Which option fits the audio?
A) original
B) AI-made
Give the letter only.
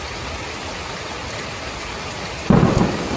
A